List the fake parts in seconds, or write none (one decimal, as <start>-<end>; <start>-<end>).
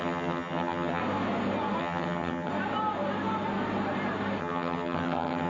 0.0-1.0; 1.8-2.5; 4.4-5.5